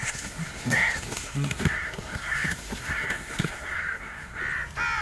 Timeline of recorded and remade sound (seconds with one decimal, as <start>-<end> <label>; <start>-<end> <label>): 0.0-4.4 remade; 4.4-5.0 recorded